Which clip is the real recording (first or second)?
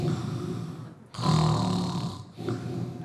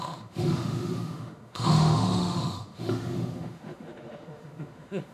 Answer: first